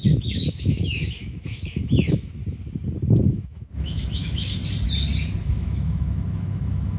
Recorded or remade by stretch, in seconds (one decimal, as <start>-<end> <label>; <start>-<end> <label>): 0.0-2.4 remade; 2.4-3.3 recorded; 3.3-4.6 remade; 4.6-5.4 recorded; 5.4-7.0 remade